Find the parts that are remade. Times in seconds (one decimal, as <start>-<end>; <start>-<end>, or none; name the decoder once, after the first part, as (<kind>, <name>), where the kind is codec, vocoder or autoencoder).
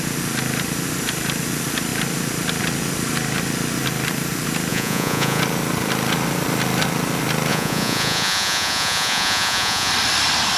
4.7-5.4 (vocoder, Vocos); 7.5-9.9